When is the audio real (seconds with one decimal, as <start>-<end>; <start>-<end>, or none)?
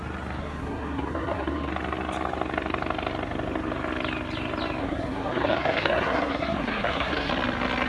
0.0-0.4; 1.7-4.8; 7.3-7.9